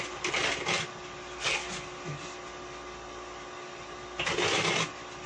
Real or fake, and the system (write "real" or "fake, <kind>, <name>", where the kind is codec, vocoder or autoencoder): real